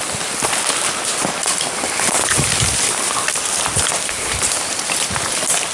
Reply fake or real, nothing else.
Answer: real